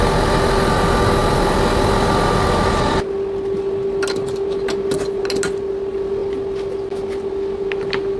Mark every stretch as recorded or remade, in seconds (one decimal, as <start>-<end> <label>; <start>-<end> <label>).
0.0-8.2 recorded

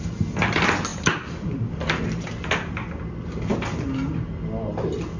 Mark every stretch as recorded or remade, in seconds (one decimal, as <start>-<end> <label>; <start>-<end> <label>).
0.0-0.9 recorded; 0.9-2.0 remade; 2.0-5.2 recorded

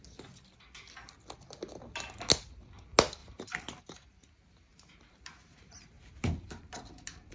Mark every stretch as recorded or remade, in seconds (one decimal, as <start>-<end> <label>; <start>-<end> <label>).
0.0-3.2 recorded; 3.2-3.8 remade; 3.8-4.7 recorded; 4.7-7.3 remade

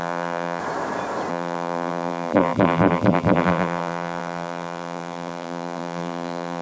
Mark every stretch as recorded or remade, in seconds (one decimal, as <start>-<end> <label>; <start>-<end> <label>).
0.0-0.6 remade; 0.6-1.3 recorded; 1.3-6.6 remade

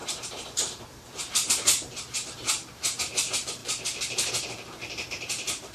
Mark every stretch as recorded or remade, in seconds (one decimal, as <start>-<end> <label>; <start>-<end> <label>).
0.0-3.6 remade; 3.6-5.1 recorded; 5.1-5.7 remade

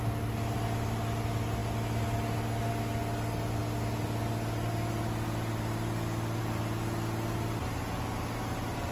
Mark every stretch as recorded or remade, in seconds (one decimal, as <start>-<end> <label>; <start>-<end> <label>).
0.0-8.9 recorded

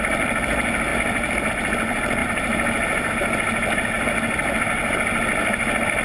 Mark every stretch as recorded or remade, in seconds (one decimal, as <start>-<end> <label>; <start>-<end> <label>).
0.0-2.2 recorded; 2.2-3.1 remade; 3.1-6.0 recorded